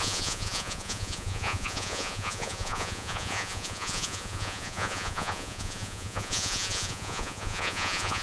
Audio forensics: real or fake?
fake